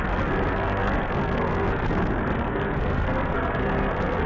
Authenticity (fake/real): fake